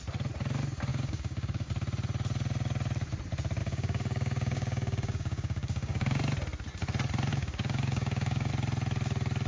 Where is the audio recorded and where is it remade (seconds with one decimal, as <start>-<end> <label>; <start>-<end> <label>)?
0.0-0.9 recorded; 0.9-1.7 remade; 1.7-3.6 recorded; 3.6-6.2 remade; 6.2-7.3 recorded; 7.3-8.5 remade; 8.5-9.5 recorded